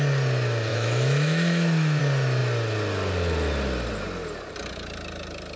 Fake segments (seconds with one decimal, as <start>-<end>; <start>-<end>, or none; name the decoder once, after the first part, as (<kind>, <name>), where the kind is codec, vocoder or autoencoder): 0.7-2.0 (autoencoder, DAC-VAE)